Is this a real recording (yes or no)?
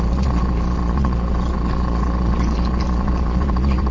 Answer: no